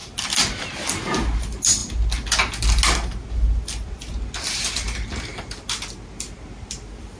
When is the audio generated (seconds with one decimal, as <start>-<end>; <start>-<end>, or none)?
none